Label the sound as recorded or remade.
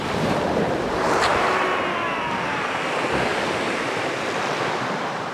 remade